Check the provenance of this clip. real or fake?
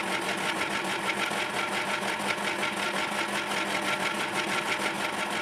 real